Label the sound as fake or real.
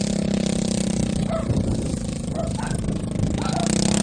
real